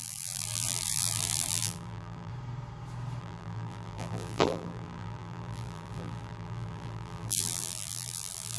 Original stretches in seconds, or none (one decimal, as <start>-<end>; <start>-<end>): 2.3-3.2